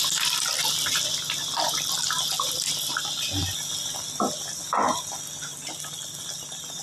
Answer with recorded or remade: recorded